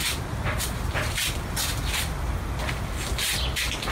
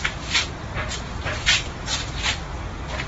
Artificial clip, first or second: second